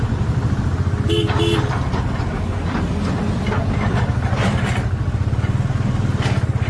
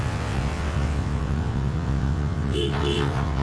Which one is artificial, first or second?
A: second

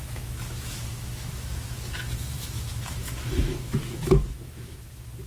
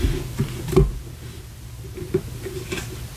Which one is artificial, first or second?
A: first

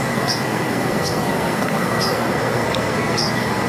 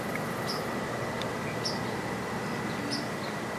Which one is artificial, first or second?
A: first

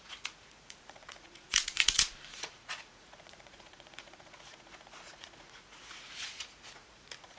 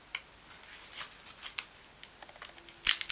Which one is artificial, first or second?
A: first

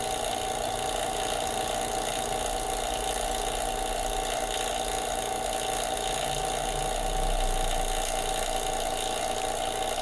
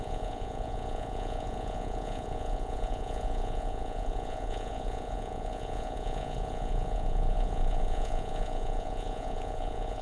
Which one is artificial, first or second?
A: second